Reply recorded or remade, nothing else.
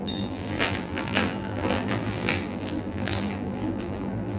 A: remade